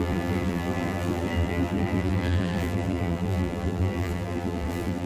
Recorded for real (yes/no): no